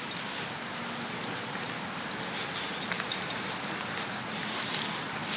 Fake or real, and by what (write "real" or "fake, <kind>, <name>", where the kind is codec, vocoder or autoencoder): real